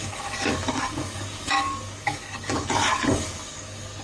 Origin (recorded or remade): remade